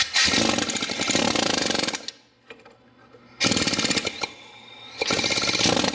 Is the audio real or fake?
real